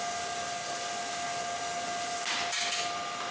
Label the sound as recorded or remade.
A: recorded